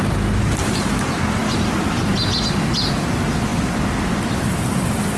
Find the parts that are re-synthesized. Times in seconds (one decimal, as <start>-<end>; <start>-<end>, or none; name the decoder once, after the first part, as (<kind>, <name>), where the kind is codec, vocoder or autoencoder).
none